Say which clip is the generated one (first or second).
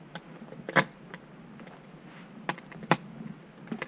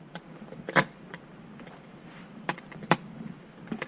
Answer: second